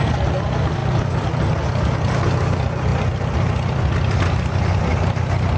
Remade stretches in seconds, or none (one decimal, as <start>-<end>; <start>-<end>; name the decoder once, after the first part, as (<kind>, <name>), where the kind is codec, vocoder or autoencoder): none